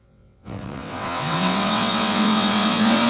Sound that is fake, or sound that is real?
fake